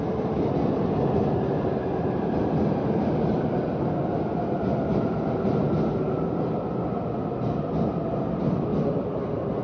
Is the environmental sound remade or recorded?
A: recorded